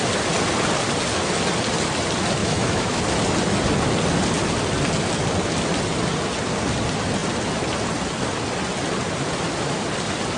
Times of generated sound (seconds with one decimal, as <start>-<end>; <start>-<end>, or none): 2.4-3.0